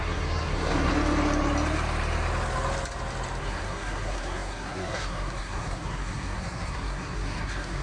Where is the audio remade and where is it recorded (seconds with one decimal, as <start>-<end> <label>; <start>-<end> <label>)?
0.0-0.9 remade; 0.9-3.4 recorded; 3.4-7.8 remade